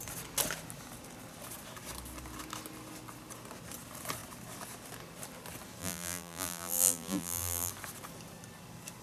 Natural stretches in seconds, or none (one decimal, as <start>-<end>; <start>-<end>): 0.0-5.8; 7.7-9.0